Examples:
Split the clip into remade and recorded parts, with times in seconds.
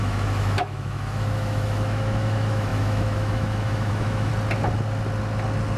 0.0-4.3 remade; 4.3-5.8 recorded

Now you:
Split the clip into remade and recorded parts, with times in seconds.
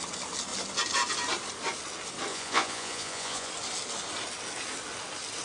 0.0-2.3 recorded; 2.3-3.5 remade; 3.5-5.4 recorded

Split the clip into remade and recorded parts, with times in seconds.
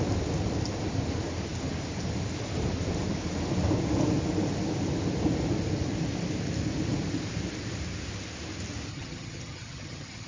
0.0-8.9 recorded; 8.9-10.3 remade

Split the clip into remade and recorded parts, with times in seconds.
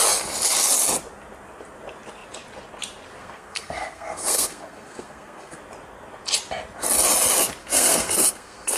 0.0-3.2 recorded; 3.2-5.6 remade; 5.6-7.6 recorded; 7.6-8.8 remade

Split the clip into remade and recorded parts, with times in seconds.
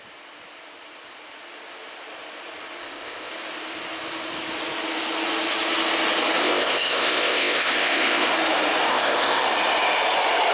0.0-2.8 recorded; 2.8-3.3 remade; 3.3-6.4 recorded; 6.4-8.3 remade; 8.3-8.9 recorded; 8.9-9.4 remade; 9.4-10.5 recorded